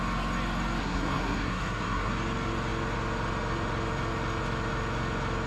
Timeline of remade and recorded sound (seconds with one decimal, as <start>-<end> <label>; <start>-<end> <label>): 0.0-0.8 recorded; 0.8-2.1 remade; 2.1-5.5 recorded